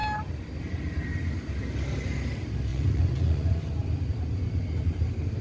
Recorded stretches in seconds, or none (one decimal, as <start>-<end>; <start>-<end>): 0.0-2.7; 3.6-5.4